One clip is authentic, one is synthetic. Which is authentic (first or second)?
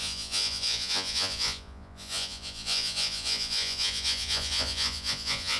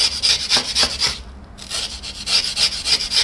second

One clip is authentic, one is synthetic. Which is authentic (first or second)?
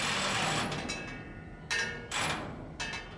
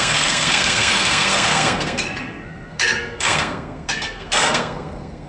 first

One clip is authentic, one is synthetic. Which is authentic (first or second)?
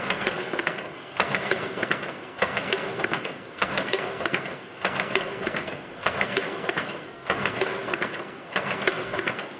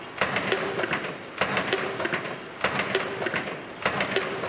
second